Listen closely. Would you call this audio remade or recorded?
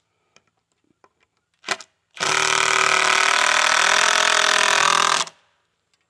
recorded